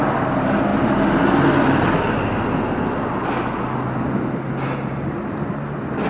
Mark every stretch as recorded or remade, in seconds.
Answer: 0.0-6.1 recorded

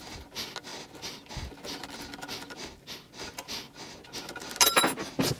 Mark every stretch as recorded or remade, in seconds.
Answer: 0.0-0.7 recorded; 0.7-1.3 remade; 1.3-5.4 recorded

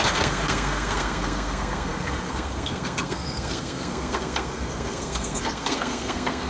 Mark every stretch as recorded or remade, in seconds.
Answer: 0.0-6.5 remade

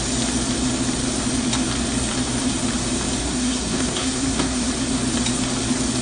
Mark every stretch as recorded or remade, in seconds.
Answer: 0.0-3.2 recorded; 3.2-4.7 remade; 4.7-6.0 recorded

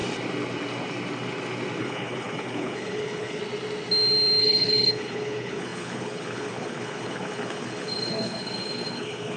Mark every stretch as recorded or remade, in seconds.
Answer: 0.0-1.8 recorded; 1.8-3.4 remade; 3.4-4.4 recorded; 4.4-9.4 remade